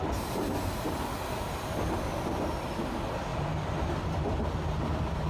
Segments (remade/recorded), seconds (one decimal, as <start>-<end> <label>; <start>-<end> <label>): 0.0-5.3 recorded